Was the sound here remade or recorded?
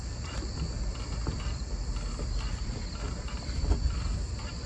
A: remade